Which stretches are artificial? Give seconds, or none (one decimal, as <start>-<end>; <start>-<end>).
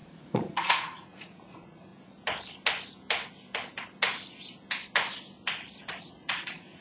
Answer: 0.0-1.9; 6.0-6.8